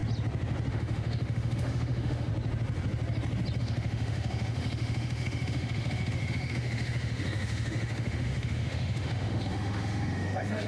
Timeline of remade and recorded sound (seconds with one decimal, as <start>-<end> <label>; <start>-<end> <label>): 0.0-0.7 recorded; 0.7-2.3 remade; 2.3-3.6 recorded; 3.6-10.7 remade